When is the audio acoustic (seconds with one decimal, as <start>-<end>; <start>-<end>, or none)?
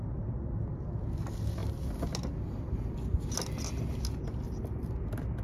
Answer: 0.0-5.4